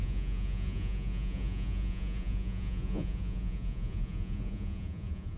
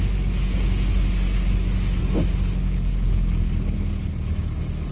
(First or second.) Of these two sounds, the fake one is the first